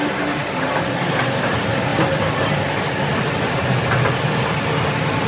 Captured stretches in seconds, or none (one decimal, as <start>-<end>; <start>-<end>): 0.0-5.3